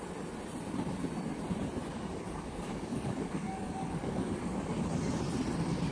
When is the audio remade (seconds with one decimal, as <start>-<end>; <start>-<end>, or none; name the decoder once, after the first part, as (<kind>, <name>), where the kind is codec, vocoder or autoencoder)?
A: 1.9-4.8 (codec, DAC)